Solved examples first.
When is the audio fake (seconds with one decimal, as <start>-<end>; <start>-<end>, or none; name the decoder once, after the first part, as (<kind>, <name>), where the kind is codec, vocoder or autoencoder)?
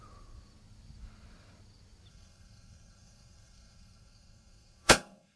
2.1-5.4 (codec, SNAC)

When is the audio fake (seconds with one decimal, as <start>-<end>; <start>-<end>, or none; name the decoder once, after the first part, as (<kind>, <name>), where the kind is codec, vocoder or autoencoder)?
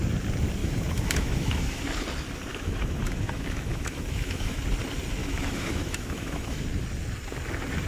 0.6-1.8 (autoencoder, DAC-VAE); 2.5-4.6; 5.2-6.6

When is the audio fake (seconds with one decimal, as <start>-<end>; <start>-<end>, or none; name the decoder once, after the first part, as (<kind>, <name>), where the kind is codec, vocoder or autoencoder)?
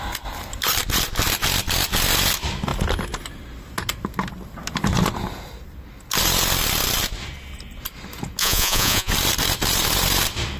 8.4-9.1 (vocoder, Vocos)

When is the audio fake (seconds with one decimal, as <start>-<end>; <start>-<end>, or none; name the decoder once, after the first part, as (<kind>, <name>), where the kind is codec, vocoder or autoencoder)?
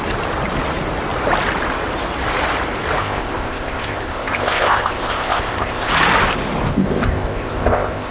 3.0-5.9 (codec, ZipCodec); 6.7-8.1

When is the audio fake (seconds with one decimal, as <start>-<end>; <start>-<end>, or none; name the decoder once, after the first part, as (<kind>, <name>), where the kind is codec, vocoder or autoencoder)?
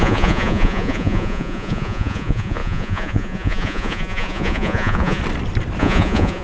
0.0-5.2 (vocoder, Vocos); 5.8-6.4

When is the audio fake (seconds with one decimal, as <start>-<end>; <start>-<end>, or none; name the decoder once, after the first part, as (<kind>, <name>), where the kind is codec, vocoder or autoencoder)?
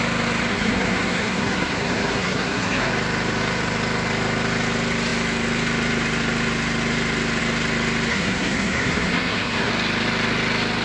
0.5-2.9 (codec, SNAC); 8.1-9.7